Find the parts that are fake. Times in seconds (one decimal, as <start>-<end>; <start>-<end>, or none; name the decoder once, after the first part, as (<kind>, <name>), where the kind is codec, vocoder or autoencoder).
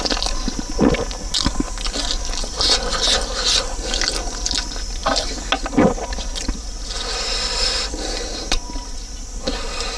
none